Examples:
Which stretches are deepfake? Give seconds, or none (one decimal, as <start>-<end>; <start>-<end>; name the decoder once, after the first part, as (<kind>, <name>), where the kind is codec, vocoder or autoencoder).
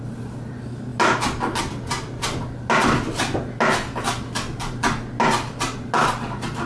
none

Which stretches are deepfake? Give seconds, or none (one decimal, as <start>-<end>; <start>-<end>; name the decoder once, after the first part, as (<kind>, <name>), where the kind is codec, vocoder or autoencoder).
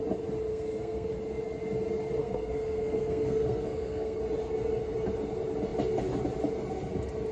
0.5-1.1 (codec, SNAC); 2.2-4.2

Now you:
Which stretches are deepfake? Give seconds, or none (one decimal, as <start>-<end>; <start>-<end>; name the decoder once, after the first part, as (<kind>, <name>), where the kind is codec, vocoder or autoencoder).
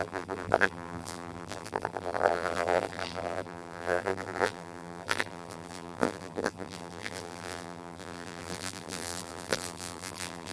0.0-10.5 (vocoder, BigVGAN v2)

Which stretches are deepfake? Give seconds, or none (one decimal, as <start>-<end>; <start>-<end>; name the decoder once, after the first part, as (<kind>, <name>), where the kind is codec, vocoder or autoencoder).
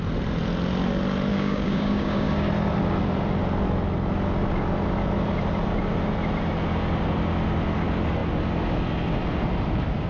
1.3-2.5 (codec, DAC)